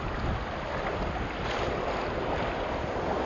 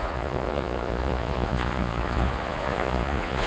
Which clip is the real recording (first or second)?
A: first